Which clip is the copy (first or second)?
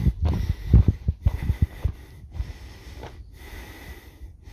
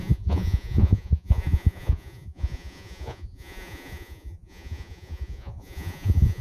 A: second